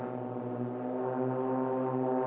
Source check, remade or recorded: recorded